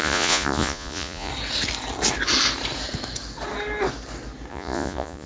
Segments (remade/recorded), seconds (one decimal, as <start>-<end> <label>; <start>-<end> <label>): 0.0-1.3 remade; 1.3-4.5 recorded; 4.5-5.3 remade